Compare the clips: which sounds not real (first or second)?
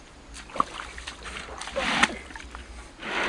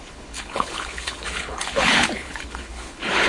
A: second